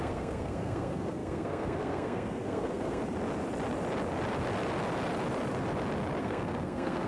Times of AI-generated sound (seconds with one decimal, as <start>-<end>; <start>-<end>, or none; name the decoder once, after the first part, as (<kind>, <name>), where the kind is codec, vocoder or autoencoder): 0.0-3.0 (codec, SNAC); 6.2-7.1

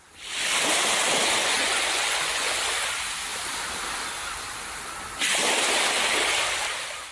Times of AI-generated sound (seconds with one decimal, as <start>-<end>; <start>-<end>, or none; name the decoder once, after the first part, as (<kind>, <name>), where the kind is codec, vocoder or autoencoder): 1.4-2.5 (vocoder, Vocos)

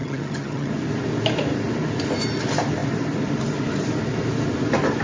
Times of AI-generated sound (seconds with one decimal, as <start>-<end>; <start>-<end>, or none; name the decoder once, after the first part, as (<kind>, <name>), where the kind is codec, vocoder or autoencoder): 0.0-0.7 (vocoder, HiFi-GAN)

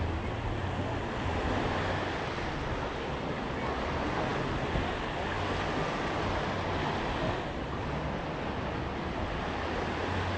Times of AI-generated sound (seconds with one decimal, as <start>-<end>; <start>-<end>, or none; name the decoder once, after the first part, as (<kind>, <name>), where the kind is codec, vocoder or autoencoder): none

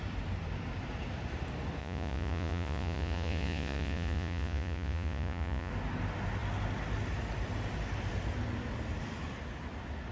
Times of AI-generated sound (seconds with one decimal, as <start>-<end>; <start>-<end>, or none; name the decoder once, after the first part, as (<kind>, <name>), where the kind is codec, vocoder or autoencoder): 1.8-5.7 (vocoder, Vocos)

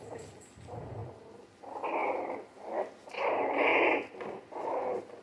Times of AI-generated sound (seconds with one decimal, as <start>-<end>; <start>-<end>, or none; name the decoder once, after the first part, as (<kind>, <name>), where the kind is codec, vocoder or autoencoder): none

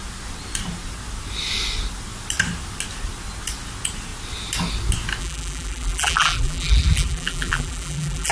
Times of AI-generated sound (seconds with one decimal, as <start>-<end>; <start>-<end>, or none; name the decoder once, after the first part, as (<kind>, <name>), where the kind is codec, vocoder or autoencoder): 5.2-8.3 (vocoder, BigVGAN v2)

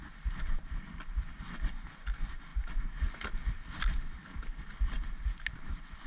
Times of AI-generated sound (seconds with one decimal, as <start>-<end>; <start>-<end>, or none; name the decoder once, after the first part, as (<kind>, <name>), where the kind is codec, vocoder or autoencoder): none